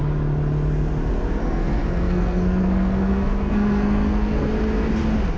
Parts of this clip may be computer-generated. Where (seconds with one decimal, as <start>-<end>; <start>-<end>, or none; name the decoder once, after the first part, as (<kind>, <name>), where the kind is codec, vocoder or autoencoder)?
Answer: 1.4-4.5 (codec, SNAC)